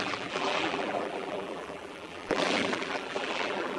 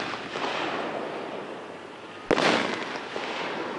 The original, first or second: second